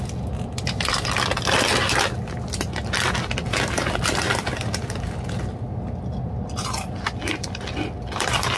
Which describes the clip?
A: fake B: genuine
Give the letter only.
B